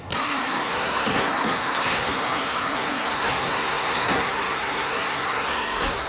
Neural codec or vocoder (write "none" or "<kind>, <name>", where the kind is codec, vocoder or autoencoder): codec, SNAC